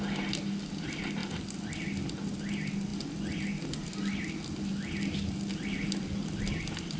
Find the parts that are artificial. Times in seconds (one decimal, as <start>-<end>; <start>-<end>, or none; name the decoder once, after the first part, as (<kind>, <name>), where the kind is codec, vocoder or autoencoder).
none